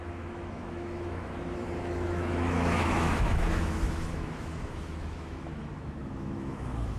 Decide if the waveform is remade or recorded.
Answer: remade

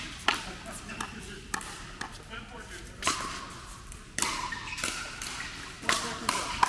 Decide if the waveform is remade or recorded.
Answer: recorded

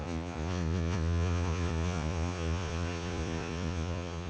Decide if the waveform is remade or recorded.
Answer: remade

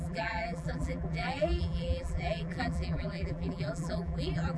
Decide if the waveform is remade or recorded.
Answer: remade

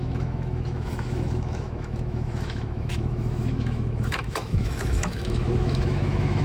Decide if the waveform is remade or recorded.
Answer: remade